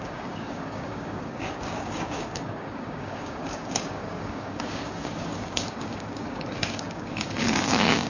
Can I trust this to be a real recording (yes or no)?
no